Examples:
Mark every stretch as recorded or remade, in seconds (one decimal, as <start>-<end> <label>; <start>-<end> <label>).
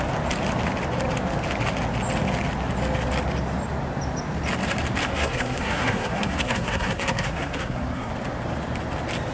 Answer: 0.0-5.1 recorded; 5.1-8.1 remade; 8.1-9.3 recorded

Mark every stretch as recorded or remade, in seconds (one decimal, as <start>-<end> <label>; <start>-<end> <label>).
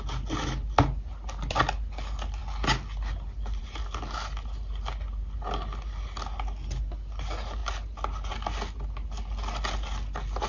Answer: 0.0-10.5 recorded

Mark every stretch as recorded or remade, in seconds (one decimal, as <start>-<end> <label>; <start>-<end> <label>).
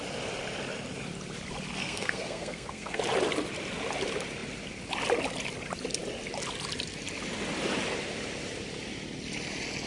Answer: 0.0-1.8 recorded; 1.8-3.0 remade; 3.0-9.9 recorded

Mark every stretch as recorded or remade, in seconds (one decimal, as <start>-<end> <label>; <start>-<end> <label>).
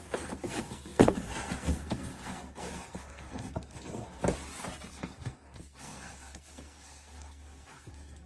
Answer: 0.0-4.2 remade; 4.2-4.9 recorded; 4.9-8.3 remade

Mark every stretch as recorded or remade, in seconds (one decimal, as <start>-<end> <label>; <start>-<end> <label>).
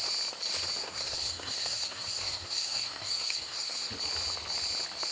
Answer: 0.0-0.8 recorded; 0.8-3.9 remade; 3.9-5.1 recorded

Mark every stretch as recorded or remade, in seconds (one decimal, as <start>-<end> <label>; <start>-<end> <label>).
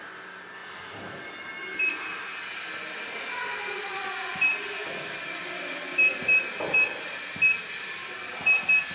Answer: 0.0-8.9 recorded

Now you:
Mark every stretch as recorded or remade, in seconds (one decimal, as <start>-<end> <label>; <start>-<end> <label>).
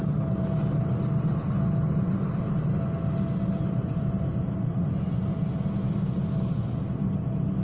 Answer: 0.0-7.6 recorded